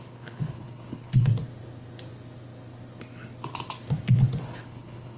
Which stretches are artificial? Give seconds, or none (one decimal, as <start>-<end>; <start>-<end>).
0.0-1.3; 4.4-5.2